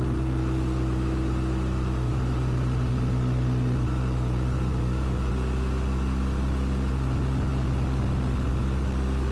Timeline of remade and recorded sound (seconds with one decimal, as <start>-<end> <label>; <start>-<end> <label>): 0.0-9.3 recorded